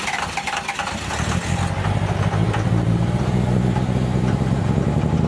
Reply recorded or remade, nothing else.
recorded